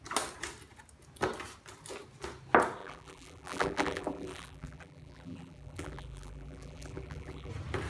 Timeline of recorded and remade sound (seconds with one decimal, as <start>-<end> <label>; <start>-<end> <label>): 0.0-2.8 recorded; 2.8-7.5 remade; 7.5-7.9 recorded